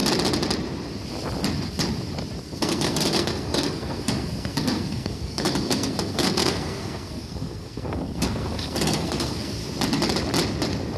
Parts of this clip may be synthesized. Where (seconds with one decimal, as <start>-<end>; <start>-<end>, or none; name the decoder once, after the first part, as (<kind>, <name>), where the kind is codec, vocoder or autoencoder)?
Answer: 2.4-9.6 (codec, SNAC)